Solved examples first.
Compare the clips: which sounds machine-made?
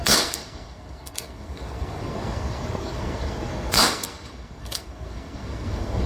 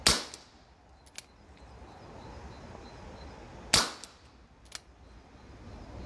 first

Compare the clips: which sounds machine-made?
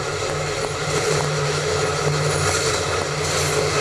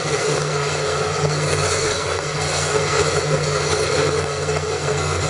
second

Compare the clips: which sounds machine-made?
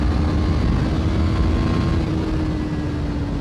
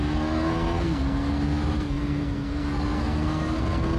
second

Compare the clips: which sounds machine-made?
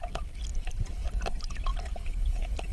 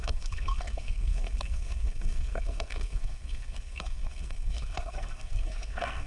second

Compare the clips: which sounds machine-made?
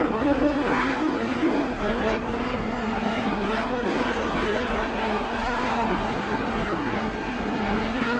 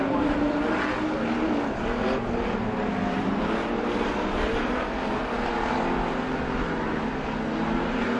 first